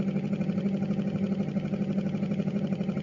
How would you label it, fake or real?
fake